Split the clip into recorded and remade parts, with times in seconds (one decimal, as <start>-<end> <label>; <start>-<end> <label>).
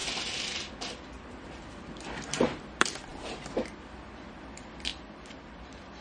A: 0.0-1.6 recorded; 1.6-6.0 remade